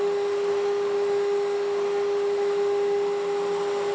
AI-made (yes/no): no